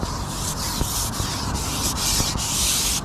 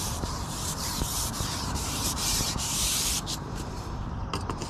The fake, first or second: second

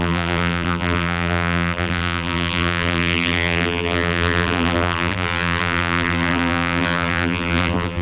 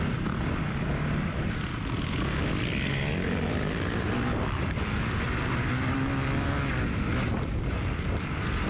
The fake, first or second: first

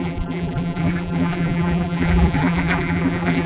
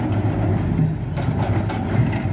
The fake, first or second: first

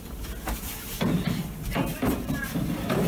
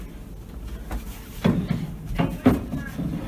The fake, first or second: first